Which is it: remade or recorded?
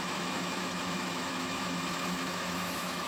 remade